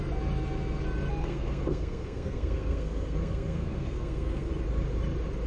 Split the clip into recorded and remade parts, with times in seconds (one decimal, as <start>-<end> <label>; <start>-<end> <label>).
0.0-1.2 recorded; 1.2-4.5 remade; 4.5-5.5 recorded